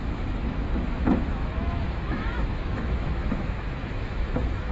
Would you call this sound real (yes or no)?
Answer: no